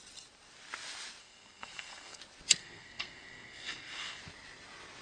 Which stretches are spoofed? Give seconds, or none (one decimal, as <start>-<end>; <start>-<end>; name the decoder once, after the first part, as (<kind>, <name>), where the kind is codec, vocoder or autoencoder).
1.2-2.2 (codec, SNAC); 2.6-4.2